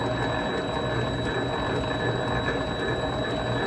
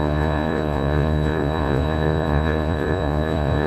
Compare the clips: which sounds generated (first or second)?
second